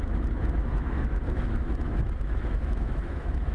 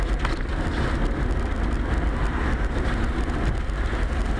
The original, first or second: second